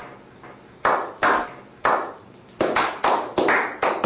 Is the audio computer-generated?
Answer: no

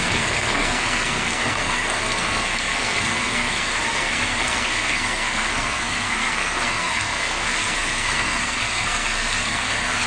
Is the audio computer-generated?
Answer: yes